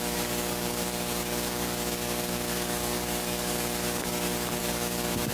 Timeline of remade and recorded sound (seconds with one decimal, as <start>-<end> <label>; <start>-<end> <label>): 0.0-5.3 remade